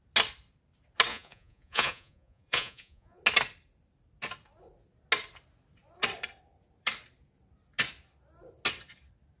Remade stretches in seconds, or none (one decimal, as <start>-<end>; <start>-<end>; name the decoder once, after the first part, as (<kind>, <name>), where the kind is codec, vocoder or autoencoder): 1.1-3.2 (vocoder, Vocos)